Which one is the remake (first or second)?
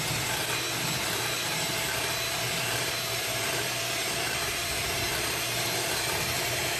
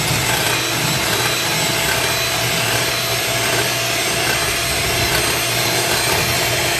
first